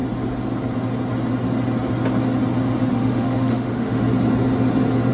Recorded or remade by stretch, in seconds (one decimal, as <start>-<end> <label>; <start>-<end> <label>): 0.0-2.9 recorded; 2.9-4.0 remade; 4.0-5.1 recorded